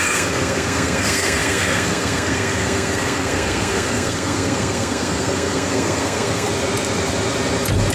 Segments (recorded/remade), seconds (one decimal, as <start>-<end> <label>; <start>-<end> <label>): 0.0-6.5 remade; 6.5-7.9 recorded